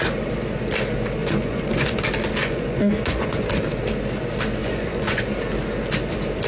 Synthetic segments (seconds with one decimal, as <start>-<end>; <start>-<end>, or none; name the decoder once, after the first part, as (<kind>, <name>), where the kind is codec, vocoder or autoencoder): 1.2-2.0 (vocoder, Vocos); 2.4-3.5; 4.6-5.2